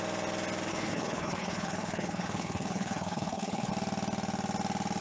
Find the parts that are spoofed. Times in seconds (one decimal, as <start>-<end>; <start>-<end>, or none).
0.7-3.7